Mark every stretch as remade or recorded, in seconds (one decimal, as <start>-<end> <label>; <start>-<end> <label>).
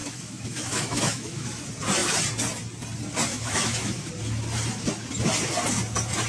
0.0-1.6 remade; 1.6-3.3 recorded; 3.3-4.1 remade; 4.1-6.3 recorded